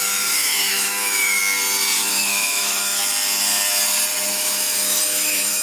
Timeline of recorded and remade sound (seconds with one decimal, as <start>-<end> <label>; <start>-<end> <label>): 0.0-1.4 remade; 1.4-2.1 recorded; 2.1-3.0 remade; 3.0-4.3 recorded; 4.3-5.6 remade